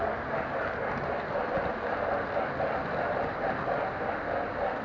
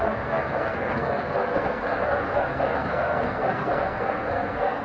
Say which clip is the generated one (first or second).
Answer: second